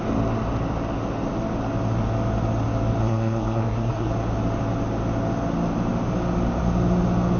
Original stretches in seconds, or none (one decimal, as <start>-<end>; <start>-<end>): 0.0-3.0; 4.1-7.4